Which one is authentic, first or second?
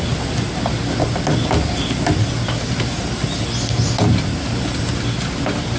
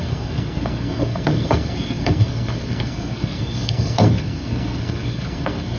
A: first